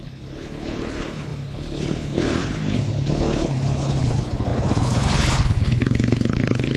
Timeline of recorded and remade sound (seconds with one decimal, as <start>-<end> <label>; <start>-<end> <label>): 0.0-6.8 remade